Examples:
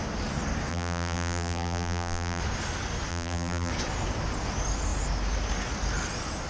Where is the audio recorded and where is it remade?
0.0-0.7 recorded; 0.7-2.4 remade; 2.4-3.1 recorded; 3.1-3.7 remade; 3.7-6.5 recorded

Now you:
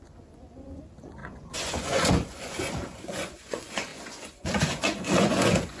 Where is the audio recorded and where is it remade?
0.0-5.8 remade